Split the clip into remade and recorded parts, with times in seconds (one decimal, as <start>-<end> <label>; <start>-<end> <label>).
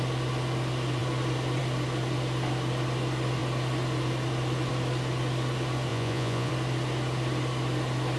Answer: 0.0-5.9 recorded; 5.9-6.5 remade; 6.5-8.2 recorded